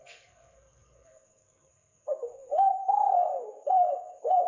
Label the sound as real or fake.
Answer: fake